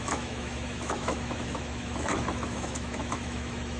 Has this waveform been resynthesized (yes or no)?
yes